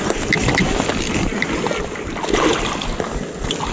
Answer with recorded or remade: recorded